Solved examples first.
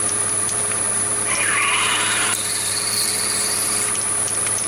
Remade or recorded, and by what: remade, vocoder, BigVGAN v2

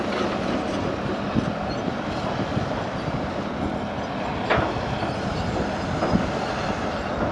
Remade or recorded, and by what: recorded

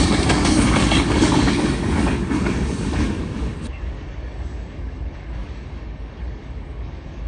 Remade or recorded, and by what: remade, codec, DAC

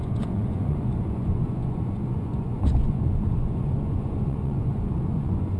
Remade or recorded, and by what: remade, vocoder, Vocos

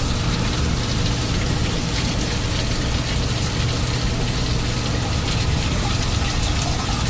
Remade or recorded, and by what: recorded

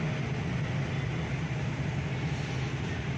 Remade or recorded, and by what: recorded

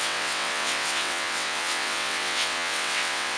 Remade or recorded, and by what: remade, vocoder, WaveNeXt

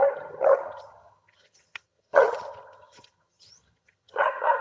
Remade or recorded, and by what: remade, vocoder, HiFi-GAN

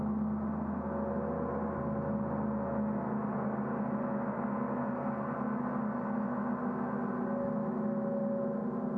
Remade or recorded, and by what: recorded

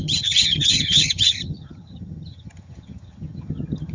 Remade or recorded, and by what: remade, vocoder, HiFi-GAN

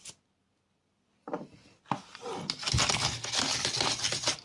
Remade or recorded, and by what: recorded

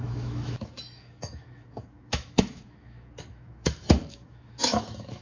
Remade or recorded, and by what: remade, autoencoder, DAC-VAE